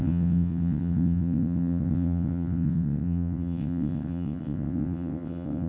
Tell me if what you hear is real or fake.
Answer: fake